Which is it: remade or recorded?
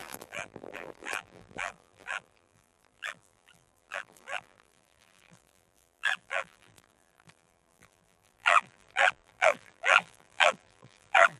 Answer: remade